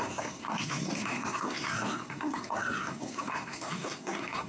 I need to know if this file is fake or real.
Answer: fake